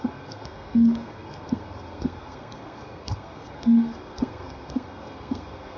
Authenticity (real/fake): fake